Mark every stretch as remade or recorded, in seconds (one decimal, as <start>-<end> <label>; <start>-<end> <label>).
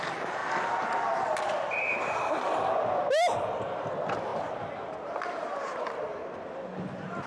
0.0-7.3 recorded